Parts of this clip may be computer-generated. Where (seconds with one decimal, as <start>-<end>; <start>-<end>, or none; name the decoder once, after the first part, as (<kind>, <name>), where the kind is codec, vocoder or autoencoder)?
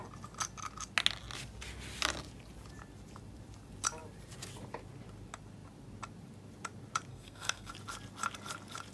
7.1-7.7 (codec, SNAC)